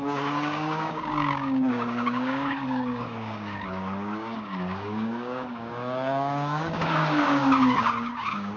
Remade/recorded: remade